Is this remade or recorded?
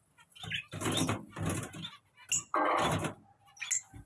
recorded